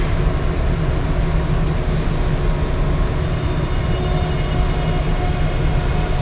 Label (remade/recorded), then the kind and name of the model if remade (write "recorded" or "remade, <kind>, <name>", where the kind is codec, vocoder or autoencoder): recorded